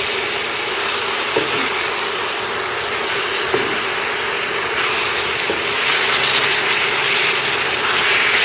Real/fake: real